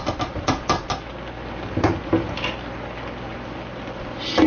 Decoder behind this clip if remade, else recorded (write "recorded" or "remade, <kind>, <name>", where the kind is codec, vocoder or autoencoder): recorded